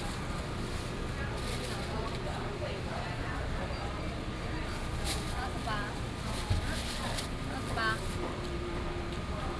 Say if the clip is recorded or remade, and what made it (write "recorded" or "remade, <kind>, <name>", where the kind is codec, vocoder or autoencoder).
recorded